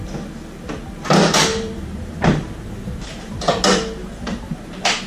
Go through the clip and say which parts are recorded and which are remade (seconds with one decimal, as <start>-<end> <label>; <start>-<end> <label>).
0.0-1.5 recorded; 1.5-3.5 remade; 3.5-4.0 recorded; 4.0-5.1 remade